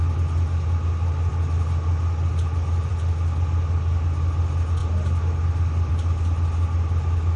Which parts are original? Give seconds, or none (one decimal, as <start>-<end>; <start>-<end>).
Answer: 0.0-7.4